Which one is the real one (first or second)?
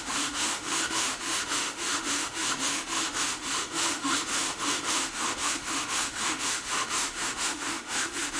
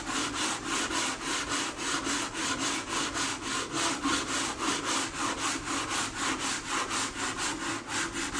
second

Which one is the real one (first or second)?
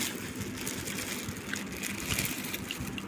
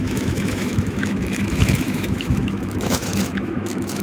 first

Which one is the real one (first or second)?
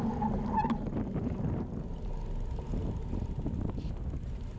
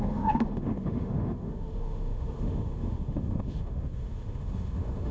first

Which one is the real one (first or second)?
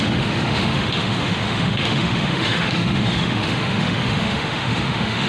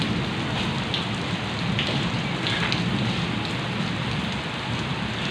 second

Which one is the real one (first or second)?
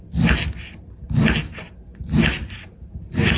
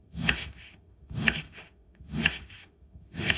first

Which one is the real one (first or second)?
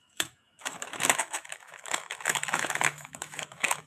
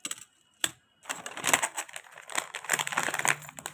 second